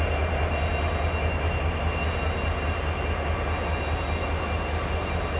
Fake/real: real